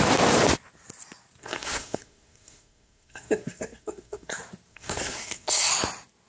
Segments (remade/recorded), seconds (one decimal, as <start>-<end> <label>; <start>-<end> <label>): 0.0-1.4 recorded; 1.4-4.3 remade; 4.3-4.7 recorded; 4.7-5.7 remade; 5.7-6.3 recorded